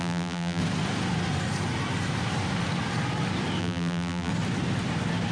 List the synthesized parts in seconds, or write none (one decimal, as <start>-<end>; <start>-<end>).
0.0-0.6; 3.6-4.3